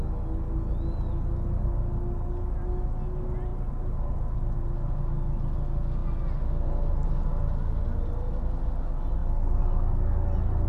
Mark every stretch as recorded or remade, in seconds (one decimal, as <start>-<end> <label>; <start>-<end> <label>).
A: 0.0-3.5 recorded; 3.5-4.2 remade; 4.2-10.7 recorded